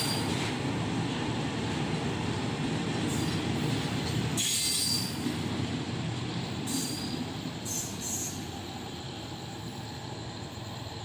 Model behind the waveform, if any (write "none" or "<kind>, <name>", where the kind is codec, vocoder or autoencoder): none